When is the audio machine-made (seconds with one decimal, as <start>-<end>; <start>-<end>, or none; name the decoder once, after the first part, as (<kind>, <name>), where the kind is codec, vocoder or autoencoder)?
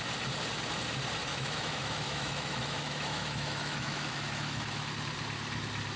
1.3-4.9 (autoencoder, DAC-VAE)